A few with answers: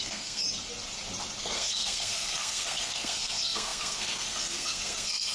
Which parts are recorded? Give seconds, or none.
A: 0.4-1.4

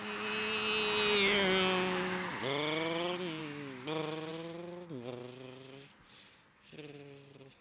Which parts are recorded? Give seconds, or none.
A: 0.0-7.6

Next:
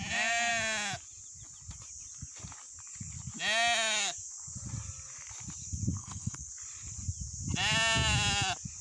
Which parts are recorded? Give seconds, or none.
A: 0.0-6.0; 6.5-8.8

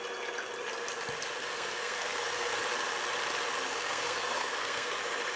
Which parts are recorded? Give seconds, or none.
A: 0.0-1.4; 2.6-3.7; 5.0-5.4

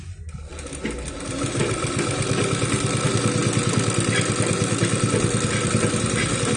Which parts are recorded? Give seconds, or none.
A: 0.0-6.6

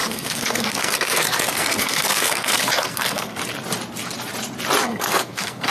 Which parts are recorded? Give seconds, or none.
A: 3.4-4.8